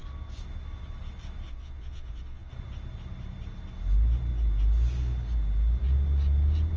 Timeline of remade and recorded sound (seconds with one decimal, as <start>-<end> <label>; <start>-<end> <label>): 0.0-1.5 recorded; 1.5-2.5 remade; 2.5-6.8 recorded